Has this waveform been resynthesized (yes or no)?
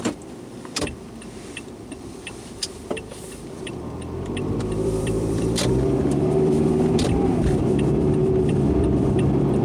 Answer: yes